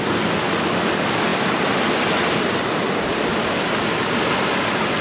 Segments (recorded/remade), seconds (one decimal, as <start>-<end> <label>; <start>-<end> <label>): 0.0-5.0 recorded

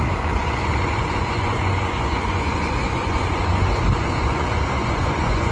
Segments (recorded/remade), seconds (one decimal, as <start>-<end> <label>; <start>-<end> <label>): 0.0-5.5 remade

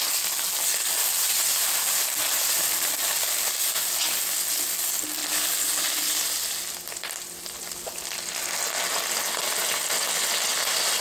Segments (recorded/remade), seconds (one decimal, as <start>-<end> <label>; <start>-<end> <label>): 0.0-1.0 recorded; 1.0-3.5 remade; 3.5-11.0 recorded